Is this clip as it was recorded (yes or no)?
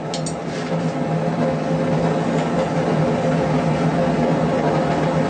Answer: yes